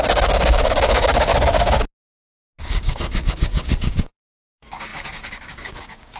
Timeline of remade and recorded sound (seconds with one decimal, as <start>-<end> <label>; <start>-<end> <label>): 0.0-1.3 remade; 1.3-2.6 recorded; 2.6-6.2 remade